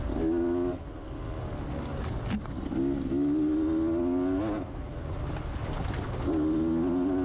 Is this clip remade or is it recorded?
recorded